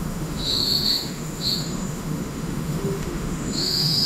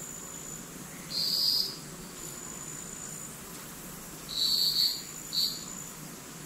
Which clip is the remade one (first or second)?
first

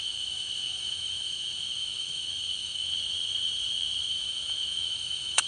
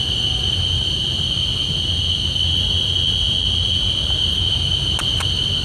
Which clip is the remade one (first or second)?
first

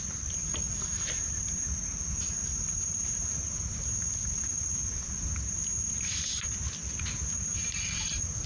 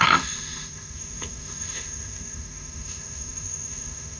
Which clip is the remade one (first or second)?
second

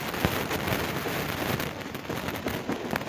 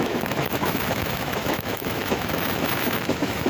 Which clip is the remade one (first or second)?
second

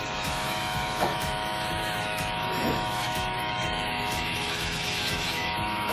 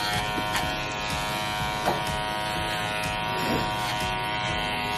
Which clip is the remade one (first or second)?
first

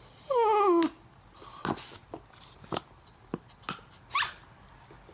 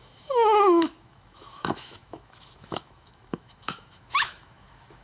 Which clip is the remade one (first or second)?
second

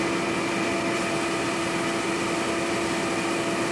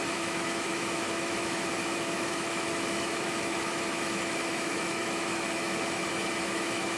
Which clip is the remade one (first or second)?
second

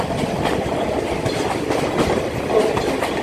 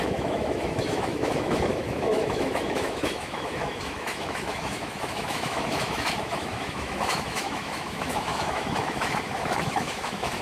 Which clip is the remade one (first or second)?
second